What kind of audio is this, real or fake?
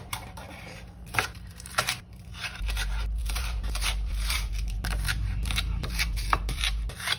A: fake